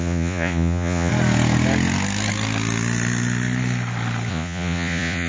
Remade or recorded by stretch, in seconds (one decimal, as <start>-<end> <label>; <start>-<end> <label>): 0.0-1.1 remade; 1.1-4.3 recorded; 4.3-5.3 remade

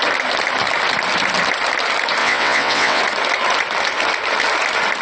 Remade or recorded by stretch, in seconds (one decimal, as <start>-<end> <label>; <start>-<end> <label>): 0.0-2.2 recorded; 2.2-3.0 remade; 3.0-5.0 recorded

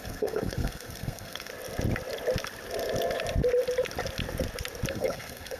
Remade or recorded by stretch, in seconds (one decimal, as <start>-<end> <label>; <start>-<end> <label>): 0.0-1.5 remade; 1.5-4.9 recorded; 4.9-5.6 remade

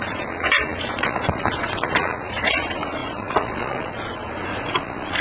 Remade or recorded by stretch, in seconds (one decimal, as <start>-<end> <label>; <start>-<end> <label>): 0.0-5.2 remade

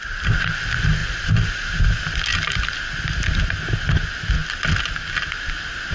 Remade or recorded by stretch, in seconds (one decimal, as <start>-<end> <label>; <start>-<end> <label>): 0.0-5.9 recorded

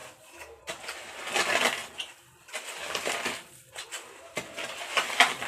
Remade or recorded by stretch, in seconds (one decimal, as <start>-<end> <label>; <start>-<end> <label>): 0.0-5.5 recorded

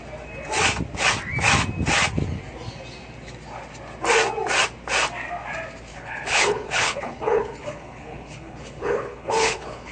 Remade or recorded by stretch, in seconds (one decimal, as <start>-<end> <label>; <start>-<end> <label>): 0.0-5.9 recorded; 5.9-9.9 remade